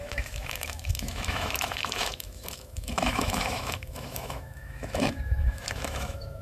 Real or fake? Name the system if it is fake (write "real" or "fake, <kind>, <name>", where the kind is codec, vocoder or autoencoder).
fake, autoencoder, DAC-VAE